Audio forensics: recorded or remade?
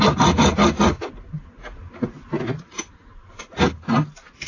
recorded